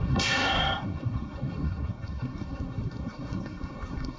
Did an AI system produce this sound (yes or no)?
yes